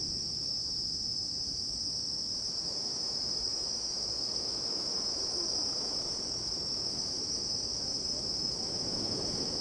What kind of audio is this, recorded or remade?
remade